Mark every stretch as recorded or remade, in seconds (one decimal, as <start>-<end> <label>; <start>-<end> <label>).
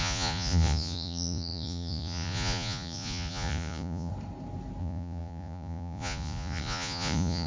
0.0-4.1 remade; 4.1-4.8 recorded; 4.8-7.5 remade